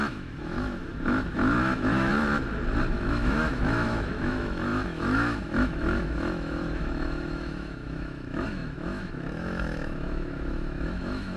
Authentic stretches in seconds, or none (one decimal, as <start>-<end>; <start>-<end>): 2.1-2.9